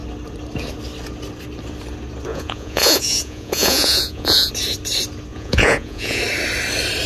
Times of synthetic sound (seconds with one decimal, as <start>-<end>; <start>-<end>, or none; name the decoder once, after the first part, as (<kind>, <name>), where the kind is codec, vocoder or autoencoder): 2.3-4.5 (vocoder, Vocos); 5.3-6.2